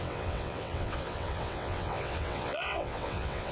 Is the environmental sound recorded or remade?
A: remade